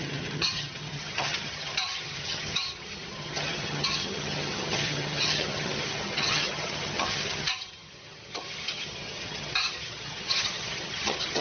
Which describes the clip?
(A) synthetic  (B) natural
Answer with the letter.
A